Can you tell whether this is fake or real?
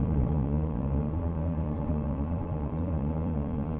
fake